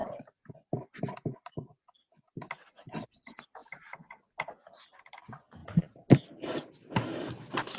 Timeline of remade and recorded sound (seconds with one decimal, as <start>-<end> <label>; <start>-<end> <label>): 0.0-7.8 recorded